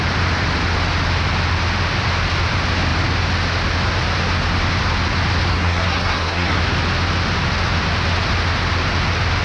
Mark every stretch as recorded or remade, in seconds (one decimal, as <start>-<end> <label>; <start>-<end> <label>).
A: 0.0-5.5 recorded; 5.5-6.6 remade; 6.6-9.4 recorded